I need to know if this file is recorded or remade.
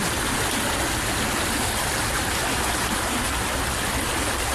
recorded